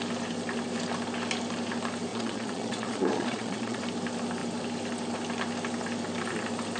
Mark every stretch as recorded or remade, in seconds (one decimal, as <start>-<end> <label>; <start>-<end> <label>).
0.0-2.1 recorded; 2.1-3.8 remade; 3.8-6.8 recorded